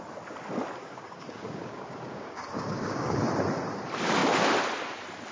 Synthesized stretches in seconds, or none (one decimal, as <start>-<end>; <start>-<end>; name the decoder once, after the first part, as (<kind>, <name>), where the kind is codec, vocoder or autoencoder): 0.8-3.2 (codec, DAC)